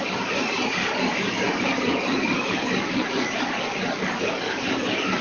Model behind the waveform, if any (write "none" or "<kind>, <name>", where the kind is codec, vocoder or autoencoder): codec, DAC